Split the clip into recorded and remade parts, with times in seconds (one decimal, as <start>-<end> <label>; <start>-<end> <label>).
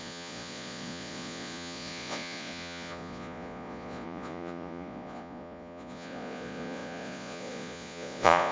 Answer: 0.0-8.5 remade